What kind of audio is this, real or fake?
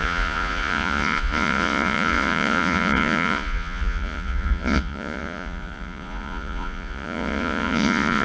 fake